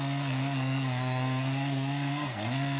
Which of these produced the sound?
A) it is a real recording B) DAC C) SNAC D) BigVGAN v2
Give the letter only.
C